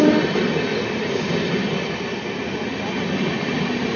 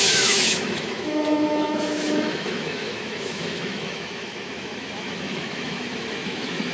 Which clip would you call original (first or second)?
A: first